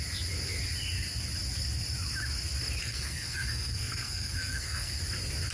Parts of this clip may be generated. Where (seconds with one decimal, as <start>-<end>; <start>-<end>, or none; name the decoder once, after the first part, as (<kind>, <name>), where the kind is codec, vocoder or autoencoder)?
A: 2.8-5.0 (codec, SNAC)